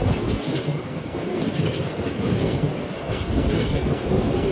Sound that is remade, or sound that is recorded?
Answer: remade